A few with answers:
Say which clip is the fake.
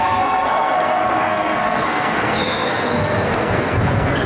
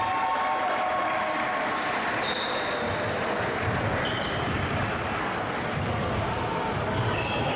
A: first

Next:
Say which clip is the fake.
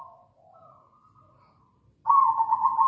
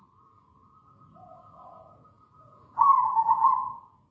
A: second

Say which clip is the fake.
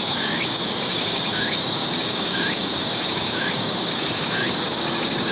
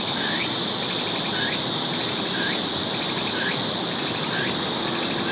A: first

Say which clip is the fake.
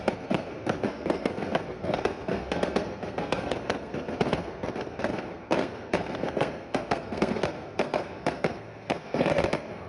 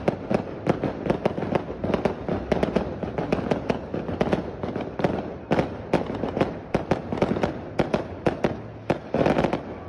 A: first